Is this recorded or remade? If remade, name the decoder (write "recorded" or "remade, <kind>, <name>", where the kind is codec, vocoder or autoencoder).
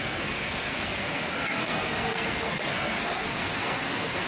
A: remade, codec, SNAC